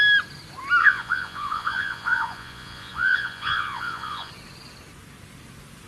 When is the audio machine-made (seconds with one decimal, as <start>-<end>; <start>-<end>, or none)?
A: 0.8-4.3